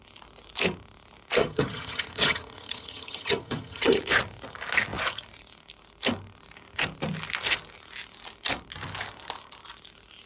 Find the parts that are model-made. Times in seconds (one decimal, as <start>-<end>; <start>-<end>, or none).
1.4-4.0